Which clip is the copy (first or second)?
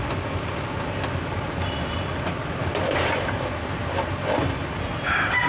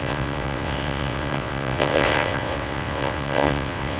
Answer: second